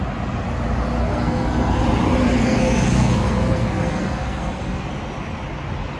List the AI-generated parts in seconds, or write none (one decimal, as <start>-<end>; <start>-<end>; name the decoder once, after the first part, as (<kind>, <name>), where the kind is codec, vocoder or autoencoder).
1.0-1.8 (codec, SNAC); 2.4-4.9

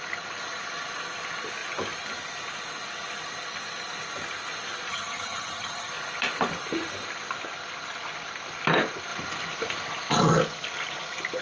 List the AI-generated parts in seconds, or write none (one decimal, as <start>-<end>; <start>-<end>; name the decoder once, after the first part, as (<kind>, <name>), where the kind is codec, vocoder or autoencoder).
4.9-5.9 (vocoder, HiFi-GAN)

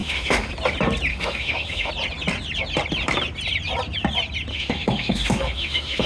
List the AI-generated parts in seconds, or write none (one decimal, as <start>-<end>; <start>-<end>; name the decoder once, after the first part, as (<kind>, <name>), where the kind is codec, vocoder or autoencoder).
0.0-0.5 (autoencoder, DAC-VAE); 1.1-1.9; 4.5-6.1